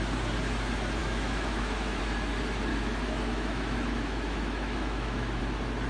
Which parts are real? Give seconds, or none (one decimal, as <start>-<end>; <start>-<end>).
0.0-1.0; 2.0-2.7; 5.4-5.9

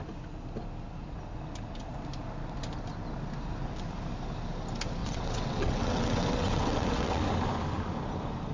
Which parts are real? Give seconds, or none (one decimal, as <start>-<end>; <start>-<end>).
0.0-5.0; 7.2-8.5